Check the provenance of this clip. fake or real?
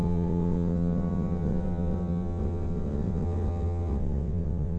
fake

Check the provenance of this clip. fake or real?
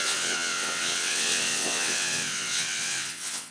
fake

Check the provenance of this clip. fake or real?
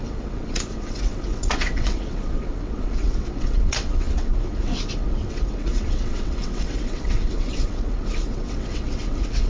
fake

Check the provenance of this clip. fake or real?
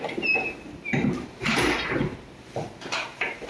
real